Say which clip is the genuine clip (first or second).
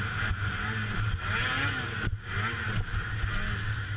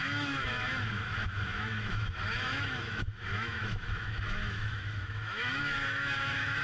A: first